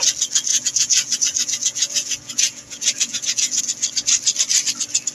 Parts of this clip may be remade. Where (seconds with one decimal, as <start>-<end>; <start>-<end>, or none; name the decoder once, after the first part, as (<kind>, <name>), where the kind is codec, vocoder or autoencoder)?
0.5-3.6 (vocoder, Vocos)